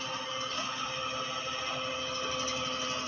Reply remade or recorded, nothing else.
recorded